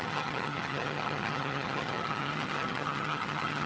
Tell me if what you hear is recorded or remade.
remade